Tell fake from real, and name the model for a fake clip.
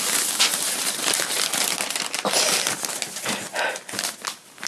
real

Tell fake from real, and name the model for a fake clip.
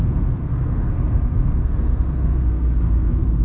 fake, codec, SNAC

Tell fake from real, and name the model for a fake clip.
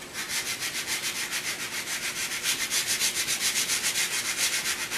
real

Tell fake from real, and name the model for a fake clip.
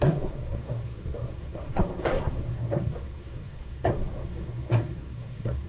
fake, codec, SNAC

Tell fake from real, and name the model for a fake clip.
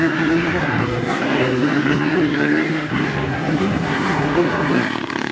fake, codec, SNAC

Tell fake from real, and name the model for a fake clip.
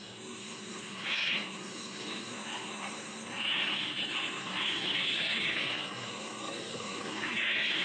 fake, codec, SNAC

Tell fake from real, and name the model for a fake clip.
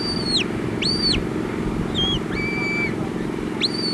real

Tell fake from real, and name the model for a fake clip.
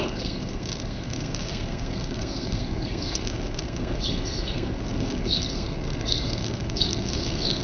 fake, codec, SNAC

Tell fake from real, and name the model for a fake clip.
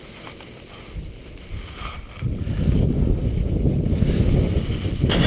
real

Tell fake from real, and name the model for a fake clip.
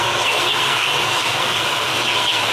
fake, codec, SNAC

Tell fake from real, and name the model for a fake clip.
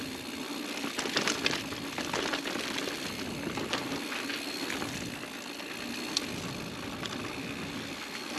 real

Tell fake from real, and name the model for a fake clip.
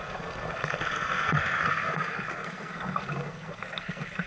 fake, codec, SNAC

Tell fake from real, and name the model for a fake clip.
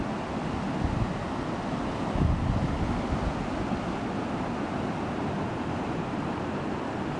real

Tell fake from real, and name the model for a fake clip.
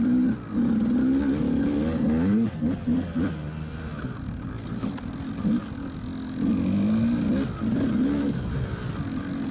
real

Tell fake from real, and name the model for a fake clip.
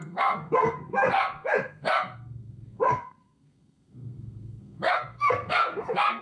fake, codec, SNAC